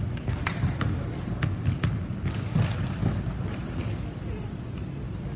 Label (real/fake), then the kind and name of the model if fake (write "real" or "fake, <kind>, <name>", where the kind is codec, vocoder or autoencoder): real